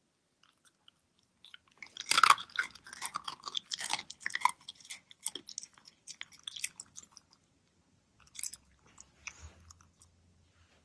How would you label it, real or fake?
real